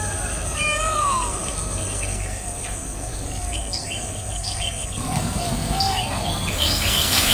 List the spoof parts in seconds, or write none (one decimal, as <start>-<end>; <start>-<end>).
0.0-7.3